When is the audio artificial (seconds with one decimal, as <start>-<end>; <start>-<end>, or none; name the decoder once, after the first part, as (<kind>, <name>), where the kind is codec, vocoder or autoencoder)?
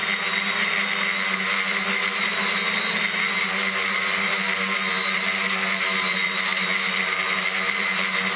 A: none